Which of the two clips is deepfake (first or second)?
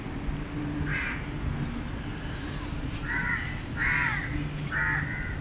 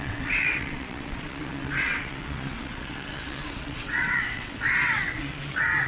second